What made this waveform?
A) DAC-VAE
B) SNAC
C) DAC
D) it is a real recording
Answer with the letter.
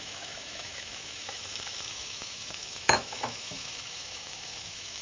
A